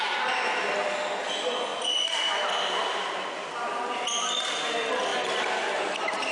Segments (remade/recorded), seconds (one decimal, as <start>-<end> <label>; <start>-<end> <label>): 0.0-6.3 recorded